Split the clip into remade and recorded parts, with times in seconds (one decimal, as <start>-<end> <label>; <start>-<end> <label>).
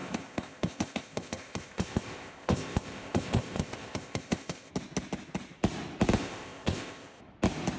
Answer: 0.0-4.7 remade; 4.7-6.2 recorded; 6.2-7.2 remade; 7.2-7.8 recorded